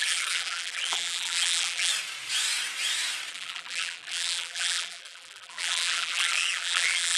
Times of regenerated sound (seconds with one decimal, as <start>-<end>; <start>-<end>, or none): 0.0-1.9; 3.3-7.2